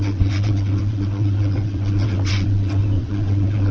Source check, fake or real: fake